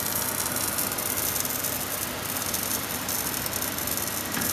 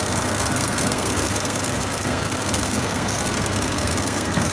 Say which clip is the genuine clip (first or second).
first